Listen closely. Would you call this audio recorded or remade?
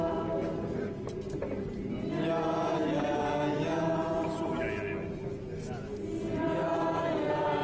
recorded